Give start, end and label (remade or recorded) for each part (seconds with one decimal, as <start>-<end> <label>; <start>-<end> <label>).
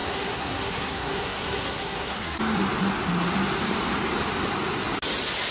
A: 0.0-2.4 remade; 2.4-5.5 recorded